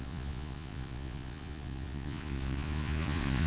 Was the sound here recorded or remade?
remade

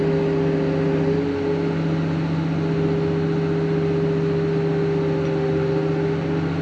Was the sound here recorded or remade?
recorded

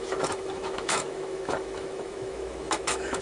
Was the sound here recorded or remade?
remade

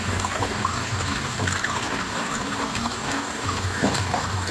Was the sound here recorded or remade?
remade